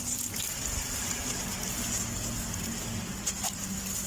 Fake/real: real